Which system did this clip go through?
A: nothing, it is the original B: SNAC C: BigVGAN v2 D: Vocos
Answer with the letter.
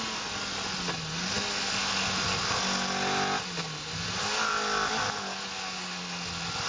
A